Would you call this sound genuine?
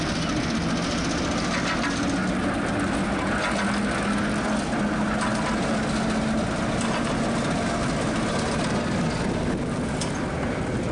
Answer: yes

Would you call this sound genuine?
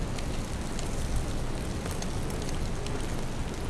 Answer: yes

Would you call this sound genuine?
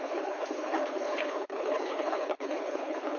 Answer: no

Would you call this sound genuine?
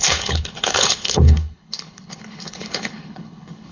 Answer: no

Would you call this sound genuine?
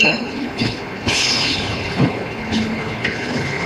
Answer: no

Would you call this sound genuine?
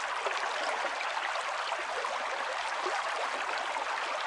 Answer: yes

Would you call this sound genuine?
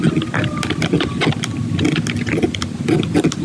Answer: yes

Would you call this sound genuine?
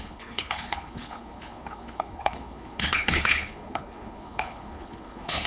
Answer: no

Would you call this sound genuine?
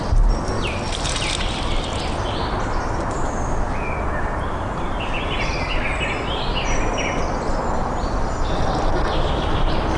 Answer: yes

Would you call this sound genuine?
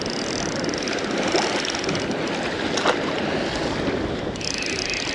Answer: yes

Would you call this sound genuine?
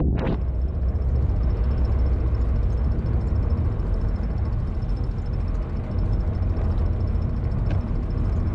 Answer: yes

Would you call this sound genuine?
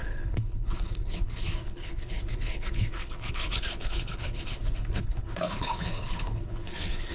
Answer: no